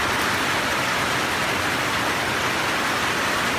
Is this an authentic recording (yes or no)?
yes